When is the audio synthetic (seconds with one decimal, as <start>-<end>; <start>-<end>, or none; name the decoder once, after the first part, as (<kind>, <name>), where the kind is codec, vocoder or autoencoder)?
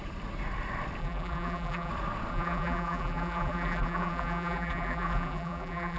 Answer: 1.0-1.9 (vocoder, BigVGAN v2); 2.3-6.0